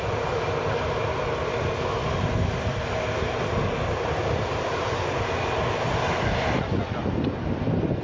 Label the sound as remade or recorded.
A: recorded